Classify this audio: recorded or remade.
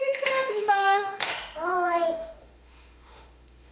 remade